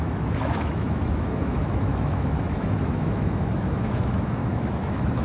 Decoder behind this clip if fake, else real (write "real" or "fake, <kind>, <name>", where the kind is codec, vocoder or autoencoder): fake, autoencoder, DAC-VAE